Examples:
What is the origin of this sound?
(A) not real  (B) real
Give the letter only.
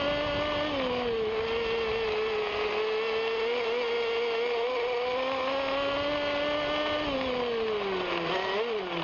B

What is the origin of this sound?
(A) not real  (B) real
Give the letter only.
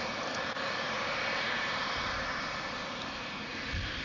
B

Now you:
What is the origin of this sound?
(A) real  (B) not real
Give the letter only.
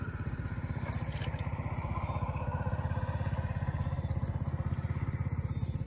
A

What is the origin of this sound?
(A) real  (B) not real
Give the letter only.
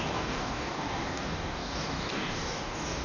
B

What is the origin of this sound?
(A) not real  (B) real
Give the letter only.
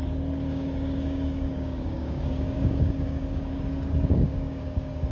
A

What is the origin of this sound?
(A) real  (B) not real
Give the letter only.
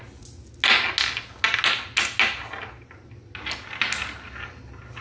A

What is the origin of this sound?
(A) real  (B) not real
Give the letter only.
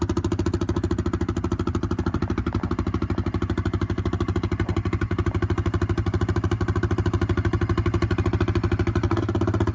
A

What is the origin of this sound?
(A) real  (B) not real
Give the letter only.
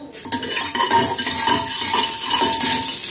A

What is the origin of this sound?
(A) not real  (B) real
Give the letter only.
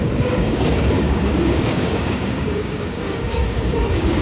A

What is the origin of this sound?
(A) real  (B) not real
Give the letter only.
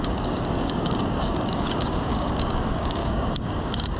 B